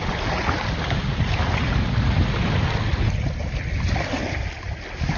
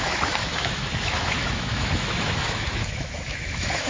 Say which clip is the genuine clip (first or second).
first